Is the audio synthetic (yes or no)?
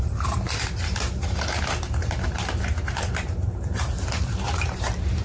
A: yes